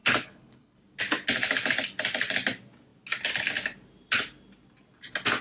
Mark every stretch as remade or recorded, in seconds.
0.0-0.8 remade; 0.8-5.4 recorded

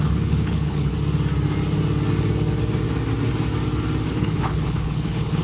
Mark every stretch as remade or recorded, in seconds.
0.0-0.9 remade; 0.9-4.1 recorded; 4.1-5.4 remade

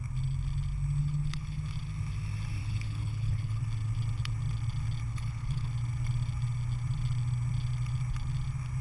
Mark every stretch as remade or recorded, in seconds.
0.0-1.0 recorded; 1.0-1.6 remade; 1.6-2.6 recorded; 2.6-3.6 remade; 3.6-5.1 recorded; 5.1-5.7 remade; 5.7-8.8 recorded

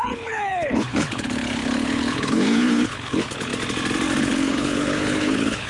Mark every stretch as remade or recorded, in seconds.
0.0-3.5 remade; 3.5-4.2 recorded; 4.2-5.7 remade

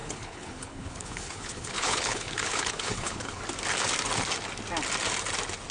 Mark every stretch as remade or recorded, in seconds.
0.0-3.4 remade; 3.4-5.7 recorded

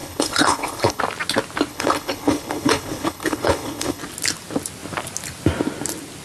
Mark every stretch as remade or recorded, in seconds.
0.0-1.0 remade; 1.0-1.7 recorded; 1.7-4.0 remade; 4.0-6.2 recorded

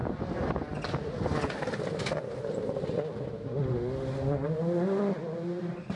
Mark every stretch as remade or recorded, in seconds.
0.0-6.0 recorded